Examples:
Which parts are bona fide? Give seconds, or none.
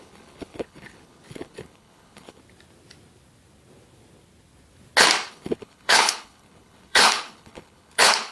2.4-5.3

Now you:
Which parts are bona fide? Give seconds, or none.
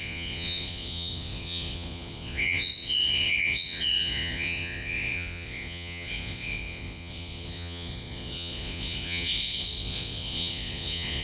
none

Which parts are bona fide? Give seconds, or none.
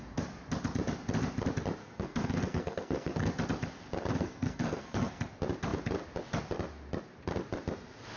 0.0-1.8; 3.3-4.1; 5.2-8.2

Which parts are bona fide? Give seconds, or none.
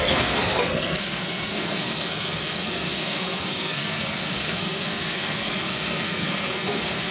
none